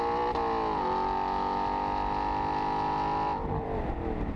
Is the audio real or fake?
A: real